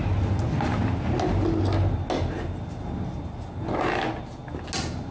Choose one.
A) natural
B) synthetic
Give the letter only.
A